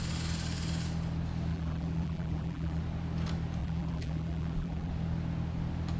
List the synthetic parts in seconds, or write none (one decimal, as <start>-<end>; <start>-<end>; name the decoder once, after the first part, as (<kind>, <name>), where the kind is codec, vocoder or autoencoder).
1.5-2.8 (vocoder, BigVGAN v2); 3.6-4.9